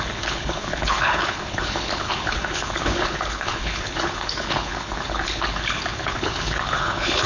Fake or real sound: fake